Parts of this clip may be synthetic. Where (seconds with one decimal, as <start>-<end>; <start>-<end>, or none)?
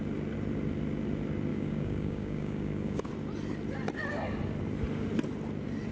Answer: 1.5-3.1